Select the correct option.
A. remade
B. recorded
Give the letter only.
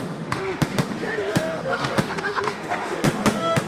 A